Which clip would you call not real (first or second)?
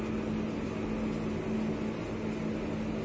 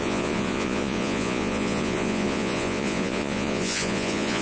second